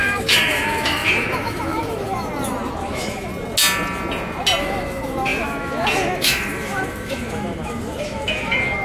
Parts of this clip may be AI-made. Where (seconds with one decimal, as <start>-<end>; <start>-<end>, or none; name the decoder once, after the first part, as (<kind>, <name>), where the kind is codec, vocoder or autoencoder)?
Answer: 0.0-2.3 (autoencoder, DAC-VAE); 2.8-3.3; 4.6-8.8